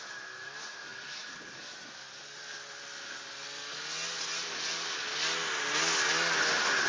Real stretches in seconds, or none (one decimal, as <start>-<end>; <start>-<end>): 0.0-6.9